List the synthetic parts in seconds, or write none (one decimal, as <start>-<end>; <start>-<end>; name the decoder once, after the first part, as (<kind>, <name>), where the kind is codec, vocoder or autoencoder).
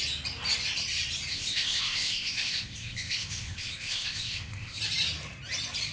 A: 1.3-4.8 (codec, ZipCodec)